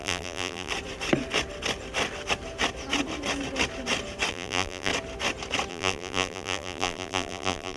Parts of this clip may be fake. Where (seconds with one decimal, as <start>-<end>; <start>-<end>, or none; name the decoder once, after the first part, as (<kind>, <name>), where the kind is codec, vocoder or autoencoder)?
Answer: 0.0-0.7 (vocoder, BigVGAN v2); 4.3-4.9; 5.7-7.8